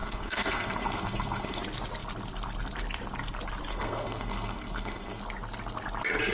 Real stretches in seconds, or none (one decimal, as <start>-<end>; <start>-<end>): 1.6-3.7; 5.2-6.3